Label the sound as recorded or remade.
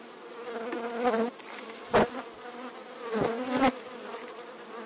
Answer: recorded